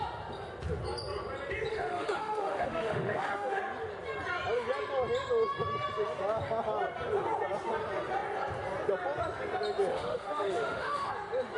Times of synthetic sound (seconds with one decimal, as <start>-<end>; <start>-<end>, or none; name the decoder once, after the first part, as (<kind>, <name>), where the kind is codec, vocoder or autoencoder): 1.7-3.6 (autoencoder, DAC-VAE); 9.9-11.1